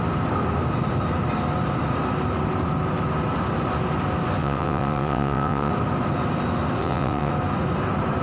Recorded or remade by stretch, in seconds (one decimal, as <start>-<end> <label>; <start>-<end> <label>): 0.0-4.4 recorded; 4.4-5.7 remade; 5.7-6.8 recorded; 6.8-7.3 remade; 7.3-8.2 recorded